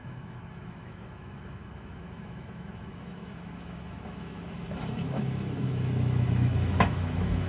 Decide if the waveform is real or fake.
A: fake